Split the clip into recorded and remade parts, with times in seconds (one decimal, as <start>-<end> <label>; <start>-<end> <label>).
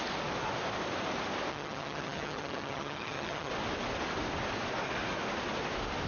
0.0-1.5 recorded; 1.5-3.5 remade; 3.5-6.1 recorded